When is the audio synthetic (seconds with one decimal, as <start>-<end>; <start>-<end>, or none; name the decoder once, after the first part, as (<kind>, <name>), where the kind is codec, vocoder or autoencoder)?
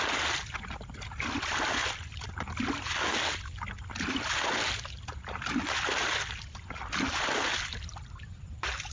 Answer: none